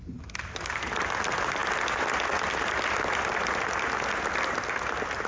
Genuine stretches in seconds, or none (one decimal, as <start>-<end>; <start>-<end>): 0.0-5.3